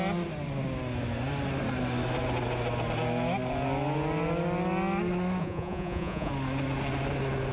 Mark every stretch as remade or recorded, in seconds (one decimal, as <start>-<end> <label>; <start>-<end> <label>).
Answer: 0.0-5.4 recorded; 5.4-6.3 remade; 6.3-7.5 recorded